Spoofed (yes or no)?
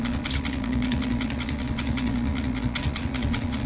yes